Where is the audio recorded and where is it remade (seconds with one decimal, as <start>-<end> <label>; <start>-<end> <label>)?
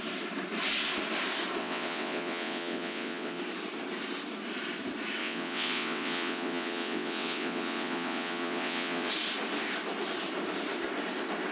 0.0-1.6 recorded; 1.6-3.4 remade; 3.4-5.2 recorded; 5.2-9.1 remade; 9.1-11.5 recorded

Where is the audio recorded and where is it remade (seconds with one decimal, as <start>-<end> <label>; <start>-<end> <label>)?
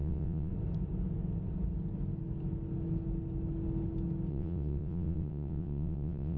0.0-0.5 remade; 0.5-4.3 recorded; 4.3-6.4 remade